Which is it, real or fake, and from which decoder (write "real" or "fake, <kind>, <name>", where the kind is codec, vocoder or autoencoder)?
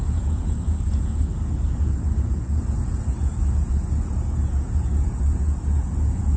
fake, vocoder, Vocos